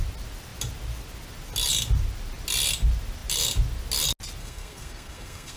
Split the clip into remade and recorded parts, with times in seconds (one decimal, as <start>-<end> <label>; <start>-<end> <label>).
0.0-4.4 recorded; 4.4-5.6 remade